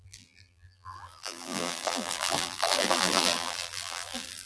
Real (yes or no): no